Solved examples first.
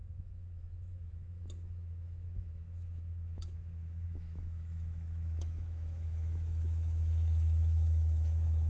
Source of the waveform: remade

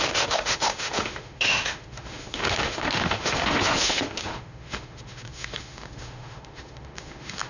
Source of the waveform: remade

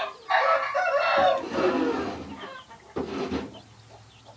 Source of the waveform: recorded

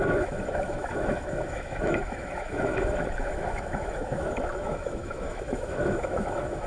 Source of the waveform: remade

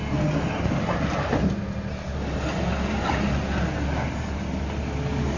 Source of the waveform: recorded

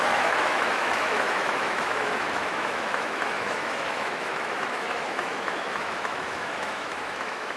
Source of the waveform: remade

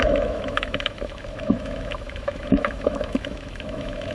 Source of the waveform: remade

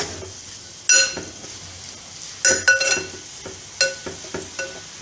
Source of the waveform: recorded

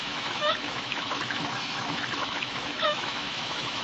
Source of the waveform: remade